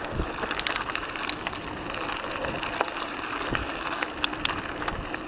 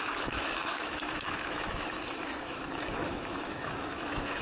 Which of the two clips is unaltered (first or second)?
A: first